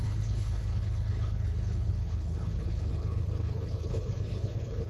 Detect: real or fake fake